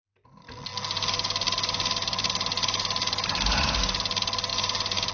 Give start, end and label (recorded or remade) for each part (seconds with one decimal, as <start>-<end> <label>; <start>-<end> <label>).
0.0-5.1 recorded